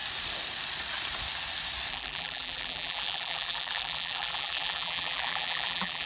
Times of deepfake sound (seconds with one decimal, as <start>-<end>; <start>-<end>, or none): 1.9-6.1